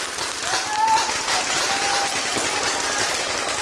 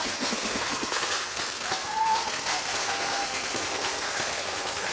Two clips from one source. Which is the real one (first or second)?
first